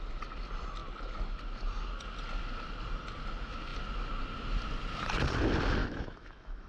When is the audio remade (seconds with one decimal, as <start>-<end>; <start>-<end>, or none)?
5.8-6.7